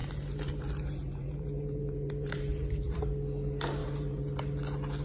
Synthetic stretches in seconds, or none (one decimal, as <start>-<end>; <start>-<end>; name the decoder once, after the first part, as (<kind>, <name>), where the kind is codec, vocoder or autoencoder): 0.0-3.0 (vocoder, BigVGAN v2); 3.8-4.4